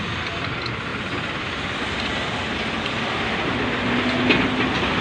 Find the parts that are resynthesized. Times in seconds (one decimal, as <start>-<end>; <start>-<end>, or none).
0.9-3.9